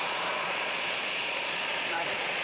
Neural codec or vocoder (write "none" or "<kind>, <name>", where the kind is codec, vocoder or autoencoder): vocoder, Vocos